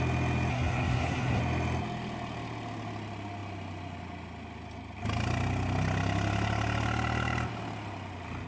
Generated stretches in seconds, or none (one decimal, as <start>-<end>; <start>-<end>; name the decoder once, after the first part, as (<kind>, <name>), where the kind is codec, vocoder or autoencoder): 0.5-1.4 (codec, SNAC)